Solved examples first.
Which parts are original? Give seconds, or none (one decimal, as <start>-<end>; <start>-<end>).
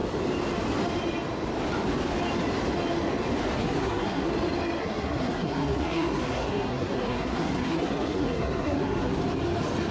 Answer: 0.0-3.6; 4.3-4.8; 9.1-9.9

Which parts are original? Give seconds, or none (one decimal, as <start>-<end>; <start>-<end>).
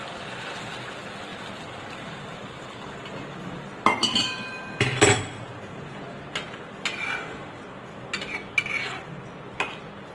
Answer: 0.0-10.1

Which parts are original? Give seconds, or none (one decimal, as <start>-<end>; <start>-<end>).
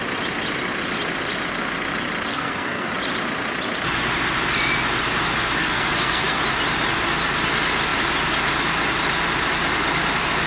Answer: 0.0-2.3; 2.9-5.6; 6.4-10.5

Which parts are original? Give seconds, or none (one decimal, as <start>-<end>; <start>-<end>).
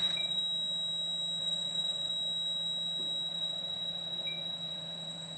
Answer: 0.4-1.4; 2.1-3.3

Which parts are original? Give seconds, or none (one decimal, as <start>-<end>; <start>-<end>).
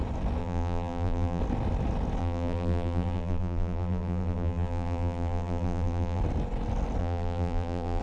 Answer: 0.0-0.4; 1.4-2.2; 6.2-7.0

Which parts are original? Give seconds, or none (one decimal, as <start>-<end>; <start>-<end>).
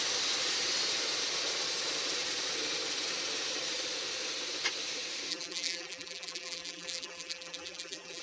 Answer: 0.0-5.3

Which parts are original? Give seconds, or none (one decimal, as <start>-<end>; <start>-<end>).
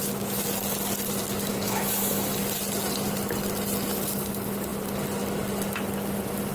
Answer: 0.0-1.5; 2.4-6.5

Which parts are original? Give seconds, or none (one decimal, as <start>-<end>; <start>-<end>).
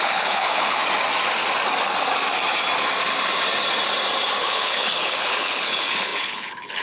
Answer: 0.8-4.4